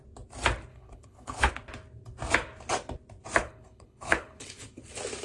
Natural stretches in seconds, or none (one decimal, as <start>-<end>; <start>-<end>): 0.0-0.7; 1.5-3.4; 4.8-5.2